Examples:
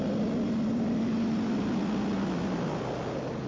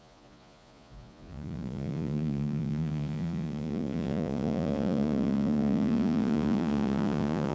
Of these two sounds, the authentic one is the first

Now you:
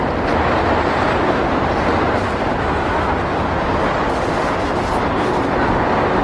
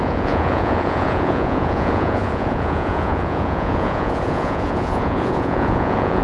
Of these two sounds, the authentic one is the first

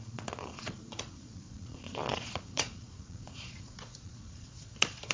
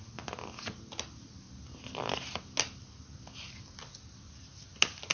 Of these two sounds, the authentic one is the second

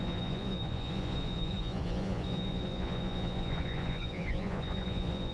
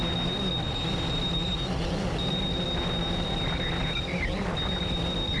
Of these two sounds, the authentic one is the second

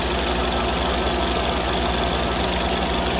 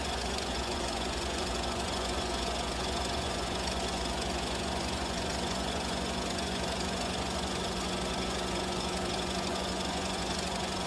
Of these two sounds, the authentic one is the first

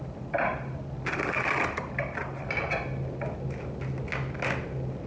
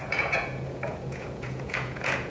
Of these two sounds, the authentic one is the first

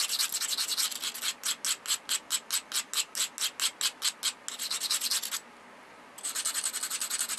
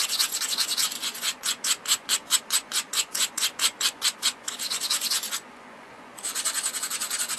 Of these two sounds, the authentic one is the first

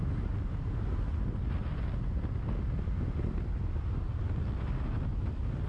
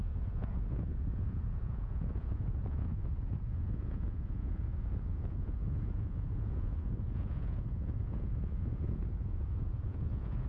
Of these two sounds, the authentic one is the first